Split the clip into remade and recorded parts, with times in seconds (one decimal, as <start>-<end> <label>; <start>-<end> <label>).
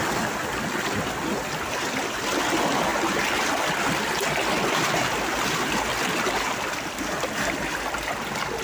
0.0-8.6 recorded